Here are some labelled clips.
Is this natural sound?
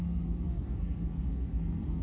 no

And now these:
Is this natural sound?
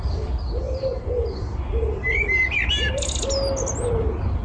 yes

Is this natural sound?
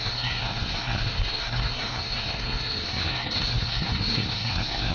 no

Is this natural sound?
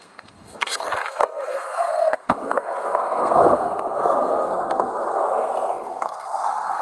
no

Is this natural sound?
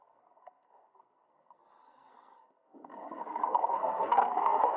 no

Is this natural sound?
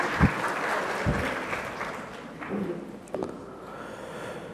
yes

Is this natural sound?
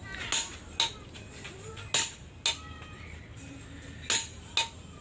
yes